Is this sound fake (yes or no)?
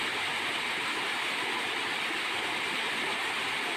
no